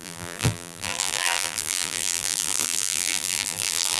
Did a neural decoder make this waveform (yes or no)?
yes